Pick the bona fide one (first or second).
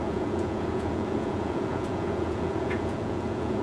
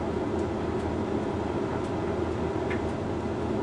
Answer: second